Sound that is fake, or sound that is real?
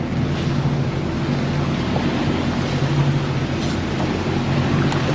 real